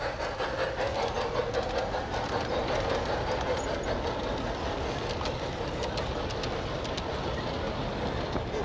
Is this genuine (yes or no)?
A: yes